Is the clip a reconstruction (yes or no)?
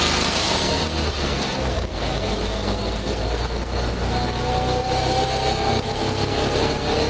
yes